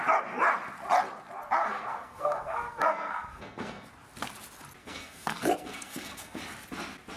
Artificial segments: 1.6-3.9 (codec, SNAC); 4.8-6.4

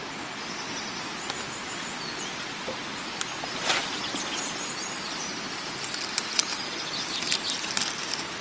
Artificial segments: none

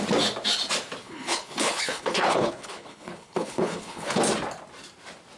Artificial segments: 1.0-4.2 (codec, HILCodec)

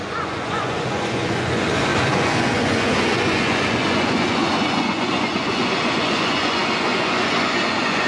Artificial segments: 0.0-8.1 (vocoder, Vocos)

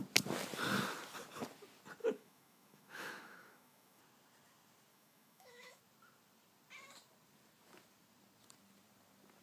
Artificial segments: 2.0-4.0 (autoencoder, DAC-VAE); 4.9-5.8